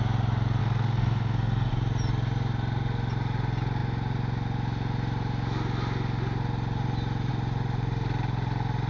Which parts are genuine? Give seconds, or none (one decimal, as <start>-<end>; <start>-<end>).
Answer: 0.0-0.6; 1.7-8.9